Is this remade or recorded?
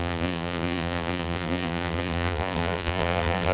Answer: remade